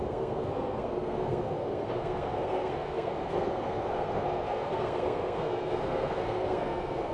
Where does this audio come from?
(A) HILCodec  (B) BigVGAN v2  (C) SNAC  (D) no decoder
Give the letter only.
C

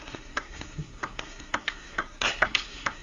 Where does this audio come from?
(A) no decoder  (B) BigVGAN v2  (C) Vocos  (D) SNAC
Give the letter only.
D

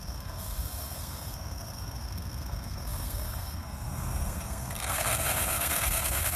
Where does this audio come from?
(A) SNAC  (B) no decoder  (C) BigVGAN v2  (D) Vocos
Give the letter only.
A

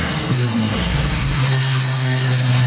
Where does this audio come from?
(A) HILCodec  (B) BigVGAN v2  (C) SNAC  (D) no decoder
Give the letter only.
C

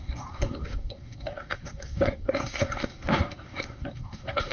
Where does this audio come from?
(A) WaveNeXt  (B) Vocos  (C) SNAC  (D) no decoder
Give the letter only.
C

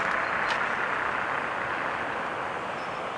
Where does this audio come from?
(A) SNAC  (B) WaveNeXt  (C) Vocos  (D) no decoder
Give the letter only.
D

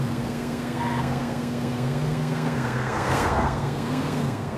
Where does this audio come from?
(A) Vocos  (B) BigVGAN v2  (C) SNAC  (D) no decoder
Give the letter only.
C